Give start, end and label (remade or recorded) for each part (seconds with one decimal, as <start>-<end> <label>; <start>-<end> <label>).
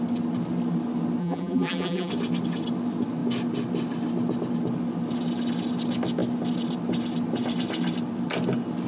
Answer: 0.0-1.2 recorded; 1.2-2.1 remade; 2.1-8.9 recorded